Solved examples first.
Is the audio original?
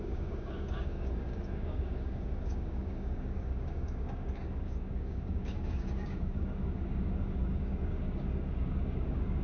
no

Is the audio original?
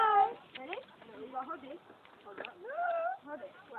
yes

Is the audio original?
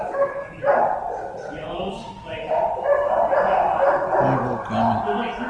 yes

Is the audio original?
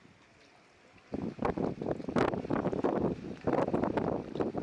yes